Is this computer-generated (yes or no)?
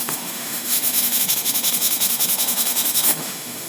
yes